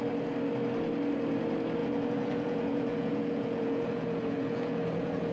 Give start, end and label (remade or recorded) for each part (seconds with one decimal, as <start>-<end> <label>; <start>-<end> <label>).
0.0-1.8 recorded; 1.8-5.3 remade